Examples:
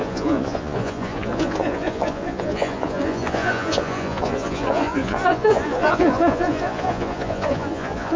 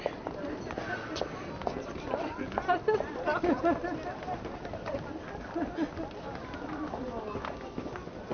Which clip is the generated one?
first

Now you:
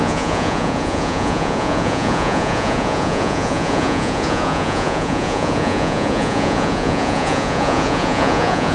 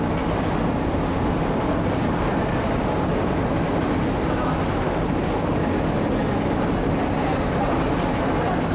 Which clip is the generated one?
first